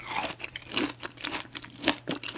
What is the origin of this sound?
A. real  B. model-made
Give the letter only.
A